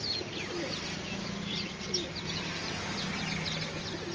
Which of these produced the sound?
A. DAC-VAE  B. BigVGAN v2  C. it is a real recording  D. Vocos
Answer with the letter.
C